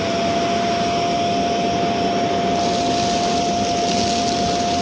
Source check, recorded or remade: recorded